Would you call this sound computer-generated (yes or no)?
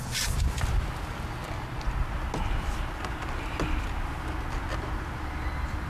no